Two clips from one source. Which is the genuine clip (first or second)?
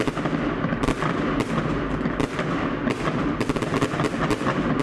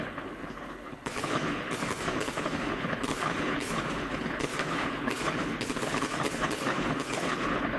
first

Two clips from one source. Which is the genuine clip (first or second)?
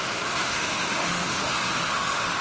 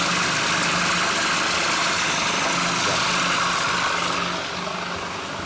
second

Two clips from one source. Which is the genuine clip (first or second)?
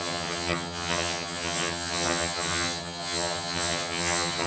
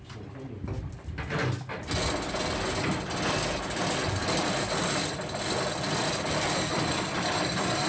second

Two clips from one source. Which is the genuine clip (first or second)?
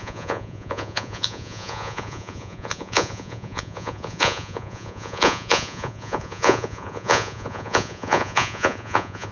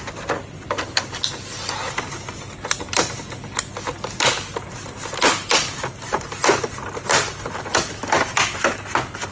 second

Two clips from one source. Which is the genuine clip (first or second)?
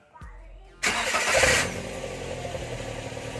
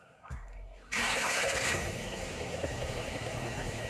first